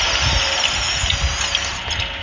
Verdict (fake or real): real